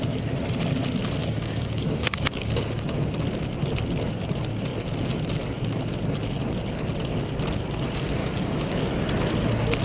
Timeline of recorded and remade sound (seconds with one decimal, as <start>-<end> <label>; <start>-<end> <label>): 0.0-1.2 recorded; 1.2-2.9 remade; 2.9-8.2 recorded; 8.2-8.8 remade; 8.8-9.8 recorded